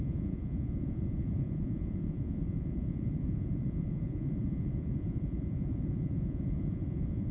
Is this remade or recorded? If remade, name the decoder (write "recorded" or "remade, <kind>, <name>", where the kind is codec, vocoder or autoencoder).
remade, vocoder, Vocos